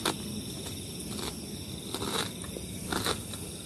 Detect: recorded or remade recorded